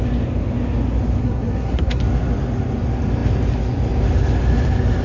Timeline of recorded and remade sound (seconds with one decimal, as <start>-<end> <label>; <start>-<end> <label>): 0.0-1.2 recorded; 1.2-2.0 remade; 2.0-5.0 recorded